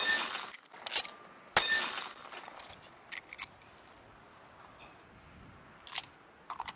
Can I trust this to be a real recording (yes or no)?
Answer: yes